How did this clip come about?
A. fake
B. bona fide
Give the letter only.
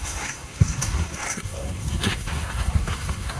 A